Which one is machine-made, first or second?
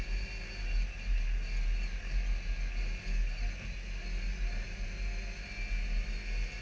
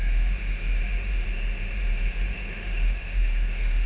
second